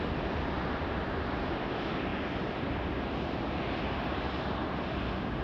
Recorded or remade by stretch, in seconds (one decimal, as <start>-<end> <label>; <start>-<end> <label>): 0.0-5.4 recorded